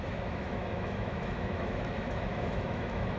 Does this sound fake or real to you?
fake